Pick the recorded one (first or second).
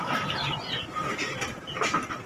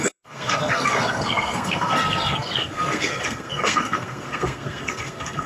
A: first